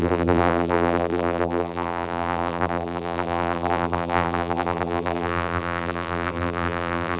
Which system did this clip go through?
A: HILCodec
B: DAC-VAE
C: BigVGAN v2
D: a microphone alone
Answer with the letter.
C